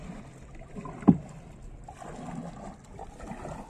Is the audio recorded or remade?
recorded